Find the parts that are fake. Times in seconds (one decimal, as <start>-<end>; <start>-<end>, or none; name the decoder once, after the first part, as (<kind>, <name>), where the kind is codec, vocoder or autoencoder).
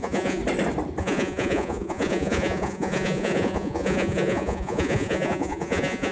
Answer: 0.0-0.4 (vocoder, Vocos); 1.0-6.1